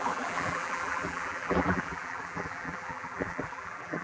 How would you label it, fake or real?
fake